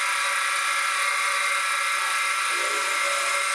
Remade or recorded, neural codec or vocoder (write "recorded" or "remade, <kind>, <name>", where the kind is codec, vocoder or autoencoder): recorded